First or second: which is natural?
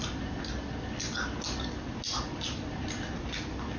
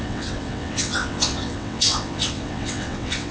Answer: first